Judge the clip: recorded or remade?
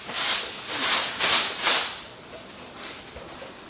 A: recorded